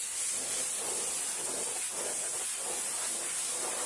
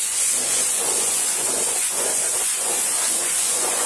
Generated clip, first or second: second